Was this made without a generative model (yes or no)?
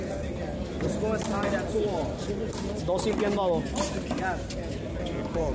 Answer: yes